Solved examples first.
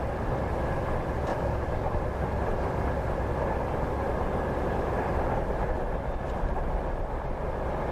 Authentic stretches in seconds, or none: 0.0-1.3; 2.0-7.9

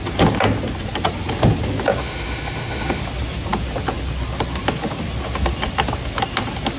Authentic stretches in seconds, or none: 0.0-2.0; 3.0-6.8